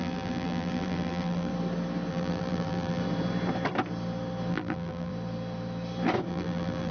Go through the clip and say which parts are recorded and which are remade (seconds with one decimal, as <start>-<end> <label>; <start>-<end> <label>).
0.0-1.5 remade; 1.5-2.1 recorded; 2.1-3.0 remade; 3.0-4.5 recorded; 4.5-5.1 remade; 5.1-6.3 recorded; 6.3-6.9 remade